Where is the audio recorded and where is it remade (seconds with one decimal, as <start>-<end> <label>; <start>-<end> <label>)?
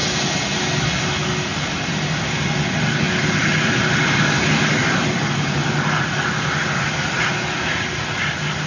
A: 0.0-8.7 recorded